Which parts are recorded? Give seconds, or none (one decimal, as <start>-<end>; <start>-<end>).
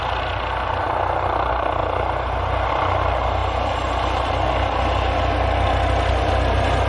0.0-6.9